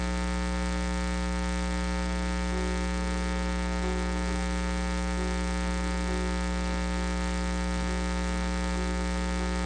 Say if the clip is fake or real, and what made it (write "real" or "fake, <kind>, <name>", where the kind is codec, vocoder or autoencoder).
real